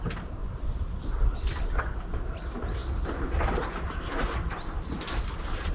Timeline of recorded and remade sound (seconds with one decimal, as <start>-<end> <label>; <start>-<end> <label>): 0.0-0.4 recorded; 0.4-1.8 remade; 1.8-5.7 recorded